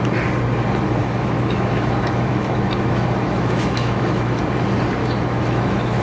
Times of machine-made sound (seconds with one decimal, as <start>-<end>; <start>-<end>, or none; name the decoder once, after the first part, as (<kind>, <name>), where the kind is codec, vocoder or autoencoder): 1.0-4.4 (autoencoder, DAC-VAE); 5.0-6.0